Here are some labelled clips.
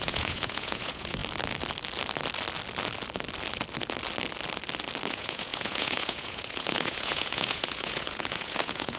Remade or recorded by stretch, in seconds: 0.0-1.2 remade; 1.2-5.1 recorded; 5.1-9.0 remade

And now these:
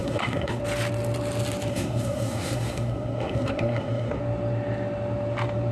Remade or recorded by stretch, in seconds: 0.0-0.6 remade; 0.6-1.7 recorded; 1.7-4.2 remade; 4.2-5.7 recorded

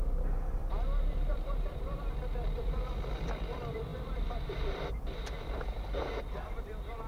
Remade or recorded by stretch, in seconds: 0.0-7.1 remade

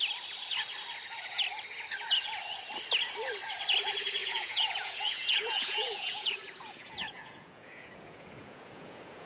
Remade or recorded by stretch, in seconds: 0.0-4.2 recorded; 4.2-9.3 remade

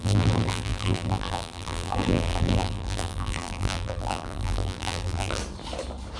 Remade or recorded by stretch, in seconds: 0.0-5.4 remade; 5.4-6.2 recorded

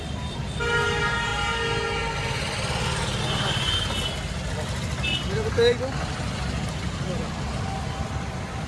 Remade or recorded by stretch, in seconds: 0.0-8.7 recorded

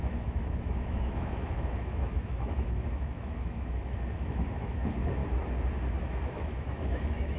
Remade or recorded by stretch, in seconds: 0.0-5.2 remade; 5.2-6.0 recorded; 6.0-7.4 remade